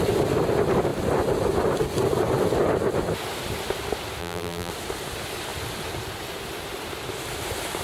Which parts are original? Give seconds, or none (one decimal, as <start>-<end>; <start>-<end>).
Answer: 0.0-4.2; 4.7-7.8

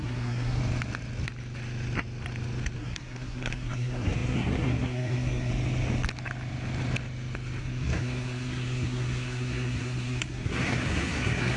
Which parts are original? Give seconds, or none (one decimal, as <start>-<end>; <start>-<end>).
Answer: 0.6-2.8; 5.5-7.6

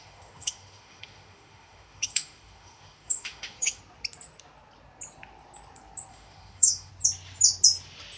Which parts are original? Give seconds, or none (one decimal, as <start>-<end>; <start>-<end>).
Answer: 3.8-6.1; 6.9-8.2